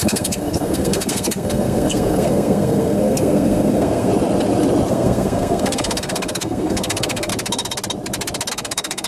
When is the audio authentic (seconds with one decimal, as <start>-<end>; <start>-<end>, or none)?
4.1-4.9; 7.3-8.5